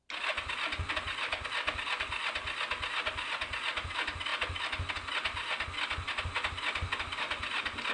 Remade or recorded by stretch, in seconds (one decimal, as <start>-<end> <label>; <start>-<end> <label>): 0.0-7.9 recorded